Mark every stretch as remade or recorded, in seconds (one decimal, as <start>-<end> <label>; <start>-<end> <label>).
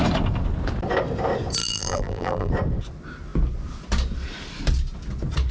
0.0-1.6 recorded; 1.6-2.5 remade; 2.5-5.5 recorded